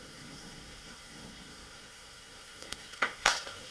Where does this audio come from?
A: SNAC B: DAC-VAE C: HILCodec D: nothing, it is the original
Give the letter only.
A